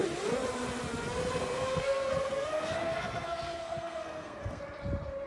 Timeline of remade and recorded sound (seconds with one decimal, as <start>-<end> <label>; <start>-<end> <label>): 0.0-1.4 recorded; 1.4-4.6 remade; 4.6-5.3 recorded